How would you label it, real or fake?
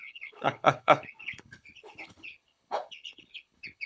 fake